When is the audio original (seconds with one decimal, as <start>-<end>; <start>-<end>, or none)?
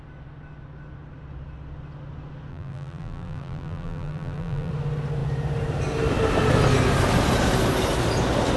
0.0-2.5; 4.7-8.6